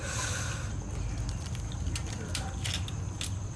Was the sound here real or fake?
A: real